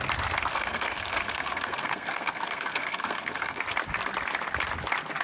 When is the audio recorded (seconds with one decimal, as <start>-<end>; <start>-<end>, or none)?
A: 0.0-0.5; 3.6-5.2